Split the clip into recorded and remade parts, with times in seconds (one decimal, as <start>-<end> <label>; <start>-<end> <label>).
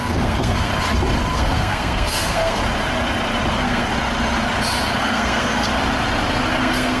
0.0-0.7 remade; 0.7-1.3 recorded; 1.3-2.6 remade; 2.6-3.5 recorded; 3.5-3.9 remade; 3.9-5.0 recorded; 5.0-5.7 remade; 5.7-6.6 recorded; 6.6-7.0 remade